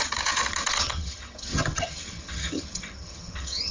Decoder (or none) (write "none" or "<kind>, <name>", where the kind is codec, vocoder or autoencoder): vocoder, HiFi-GAN